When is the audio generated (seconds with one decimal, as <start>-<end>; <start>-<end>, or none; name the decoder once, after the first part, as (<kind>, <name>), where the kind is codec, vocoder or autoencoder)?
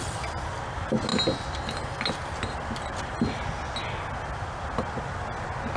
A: none